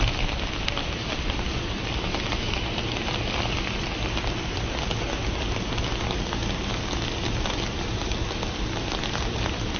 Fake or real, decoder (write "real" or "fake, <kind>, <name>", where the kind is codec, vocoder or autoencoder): real